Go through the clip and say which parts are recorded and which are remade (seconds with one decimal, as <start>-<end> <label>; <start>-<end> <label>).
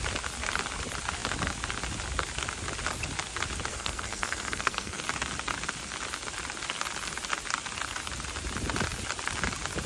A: 0.0-3.7 recorded; 3.7-5.0 remade; 5.0-9.9 recorded